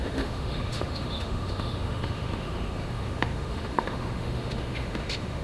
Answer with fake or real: fake